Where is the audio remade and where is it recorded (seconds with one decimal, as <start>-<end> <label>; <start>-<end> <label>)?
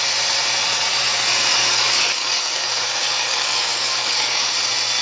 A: 0.0-1.5 recorded; 1.5-4.5 remade; 4.5-5.0 recorded